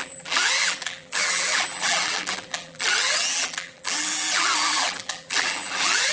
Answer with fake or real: fake